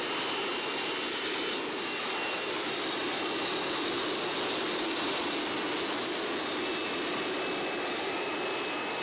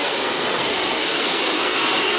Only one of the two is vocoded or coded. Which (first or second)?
second